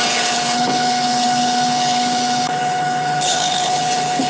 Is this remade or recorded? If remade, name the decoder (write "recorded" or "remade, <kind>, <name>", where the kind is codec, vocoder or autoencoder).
remade, codec, HILCodec